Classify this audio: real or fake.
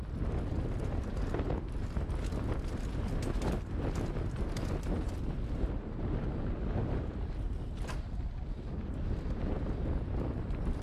real